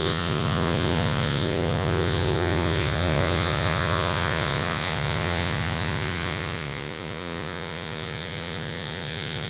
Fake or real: fake